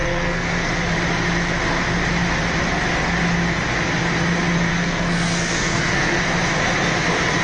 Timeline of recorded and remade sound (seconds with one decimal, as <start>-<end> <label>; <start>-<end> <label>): 0.0-0.7 remade; 0.7-4.7 recorded; 4.7-6.2 remade; 6.2-7.4 recorded